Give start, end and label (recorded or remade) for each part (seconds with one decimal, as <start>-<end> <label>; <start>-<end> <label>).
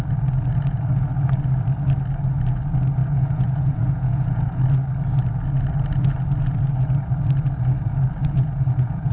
0.0-3.0 recorded; 3.0-4.6 remade; 4.6-8.2 recorded; 8.2-9.1 remade